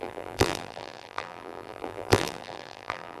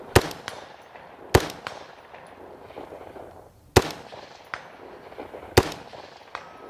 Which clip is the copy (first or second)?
first